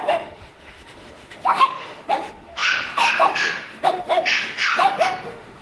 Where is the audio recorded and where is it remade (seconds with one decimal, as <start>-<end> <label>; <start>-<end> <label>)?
0.0-5.6 remade